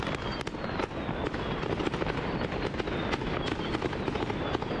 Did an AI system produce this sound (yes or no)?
no